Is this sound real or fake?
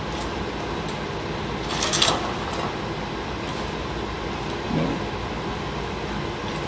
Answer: real